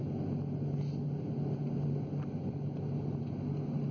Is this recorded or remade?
recorded